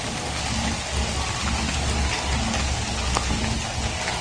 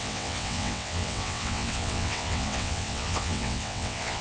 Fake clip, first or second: second